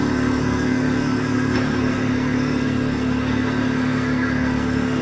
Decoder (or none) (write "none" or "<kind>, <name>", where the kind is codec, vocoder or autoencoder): codec, SNAC